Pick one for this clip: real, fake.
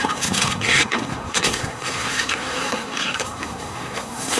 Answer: fake